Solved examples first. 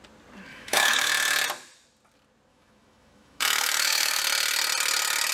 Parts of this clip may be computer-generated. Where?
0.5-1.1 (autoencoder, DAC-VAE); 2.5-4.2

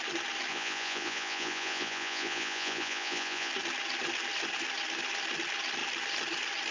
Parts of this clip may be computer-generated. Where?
0.5-3.5 (vocoder, Vocos)

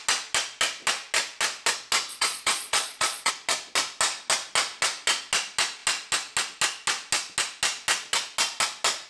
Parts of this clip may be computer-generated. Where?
2.1-3.3 (vocoder, Vocos)

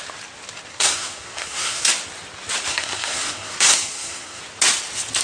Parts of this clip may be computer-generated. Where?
0.7-1.9 (codec, SNAC); 2.7-4.4

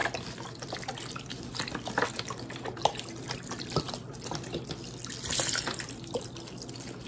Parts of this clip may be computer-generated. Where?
none

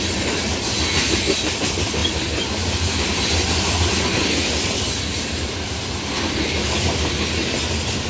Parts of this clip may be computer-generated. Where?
none

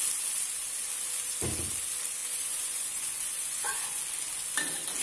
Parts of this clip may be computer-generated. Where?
2.2-4.0 (vocoder, Vocos)

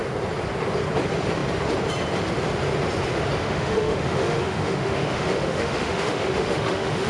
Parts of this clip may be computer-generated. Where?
3.4-7.1 (autoencoder, DAC-VAE)